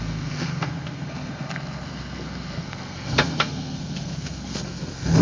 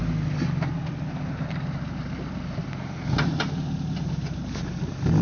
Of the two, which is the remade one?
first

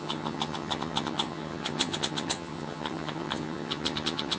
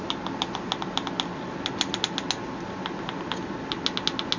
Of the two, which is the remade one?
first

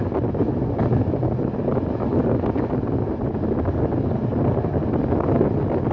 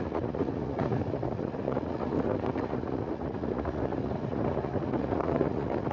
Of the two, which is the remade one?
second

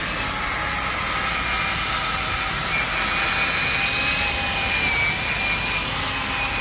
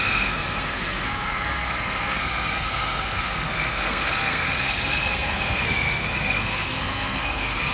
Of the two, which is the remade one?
second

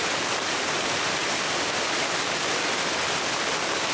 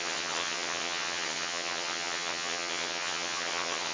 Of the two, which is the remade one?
second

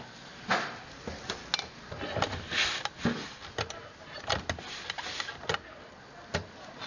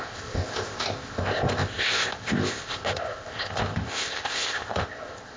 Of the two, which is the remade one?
second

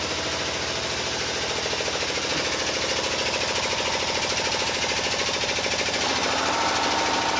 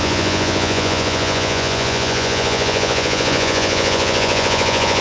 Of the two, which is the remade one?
second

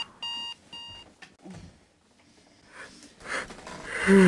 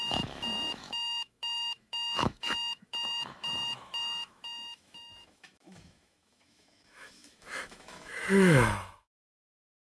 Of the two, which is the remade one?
second